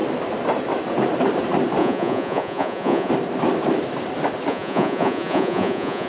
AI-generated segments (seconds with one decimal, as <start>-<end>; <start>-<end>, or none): 1.8-3.1; 4.5-6.1

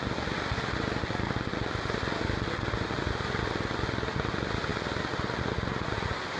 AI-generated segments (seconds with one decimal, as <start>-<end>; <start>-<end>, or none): none

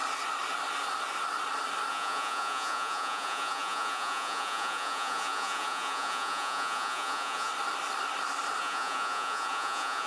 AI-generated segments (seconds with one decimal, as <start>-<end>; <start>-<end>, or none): 1.9-7.5; 8.6-10.1

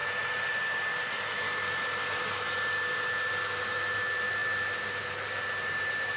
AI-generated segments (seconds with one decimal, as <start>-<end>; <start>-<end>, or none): none